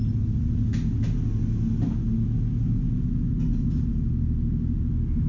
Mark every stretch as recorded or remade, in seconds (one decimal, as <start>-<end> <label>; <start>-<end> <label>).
0.0-5.3 recorded